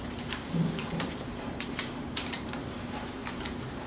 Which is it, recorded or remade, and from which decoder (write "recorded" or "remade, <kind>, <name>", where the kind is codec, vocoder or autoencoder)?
remade, vocoder, BigVGAN v2